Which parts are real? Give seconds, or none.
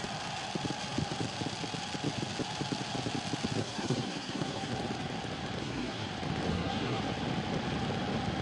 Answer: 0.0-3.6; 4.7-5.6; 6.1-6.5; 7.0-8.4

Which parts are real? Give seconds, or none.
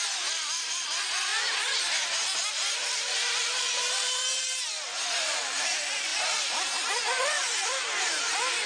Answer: 1.3-2.5; 6.1-7.3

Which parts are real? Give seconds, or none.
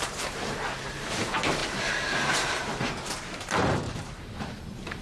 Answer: none